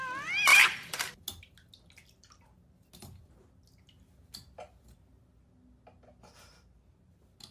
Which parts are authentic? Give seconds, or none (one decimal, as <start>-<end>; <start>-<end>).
0.0-0.5; 1.1-7.5